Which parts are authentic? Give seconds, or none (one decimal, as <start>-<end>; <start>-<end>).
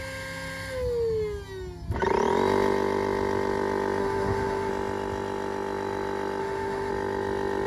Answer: 0.0-4.0; 4.7-6.4; 6.9-7.7